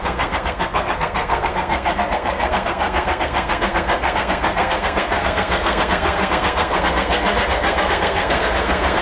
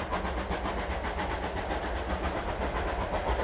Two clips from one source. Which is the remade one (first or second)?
first